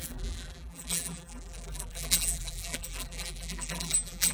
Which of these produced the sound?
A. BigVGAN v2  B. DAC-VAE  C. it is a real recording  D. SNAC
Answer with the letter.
A